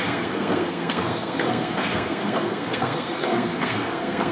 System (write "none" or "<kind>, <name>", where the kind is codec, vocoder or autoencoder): codec, SNAC